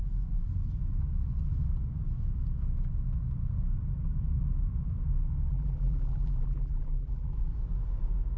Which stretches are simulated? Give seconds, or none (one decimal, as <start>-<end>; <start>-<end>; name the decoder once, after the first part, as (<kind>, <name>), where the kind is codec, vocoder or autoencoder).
5.5-7.4 (vocoder, BigVGAN v2)